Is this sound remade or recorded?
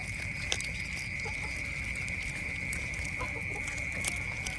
recorded